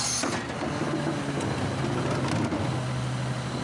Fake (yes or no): no